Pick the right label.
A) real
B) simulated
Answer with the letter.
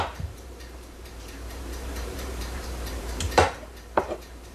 B